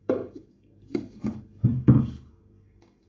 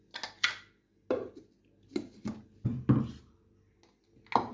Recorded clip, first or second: second